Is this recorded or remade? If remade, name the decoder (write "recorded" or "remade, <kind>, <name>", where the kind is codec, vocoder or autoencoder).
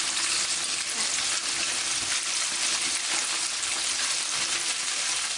recorded